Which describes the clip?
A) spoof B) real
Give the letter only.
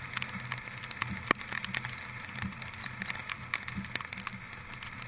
B